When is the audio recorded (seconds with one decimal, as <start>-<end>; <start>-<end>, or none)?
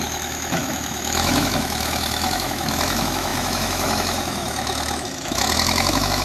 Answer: none